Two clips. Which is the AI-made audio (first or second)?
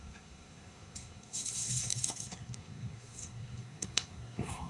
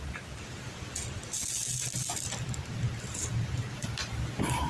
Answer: first